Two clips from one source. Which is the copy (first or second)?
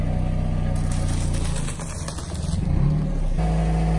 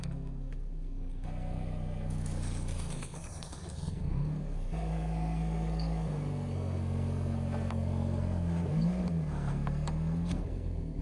second